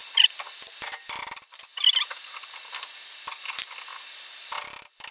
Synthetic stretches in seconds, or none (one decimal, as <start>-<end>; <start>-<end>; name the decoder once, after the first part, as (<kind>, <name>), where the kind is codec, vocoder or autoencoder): none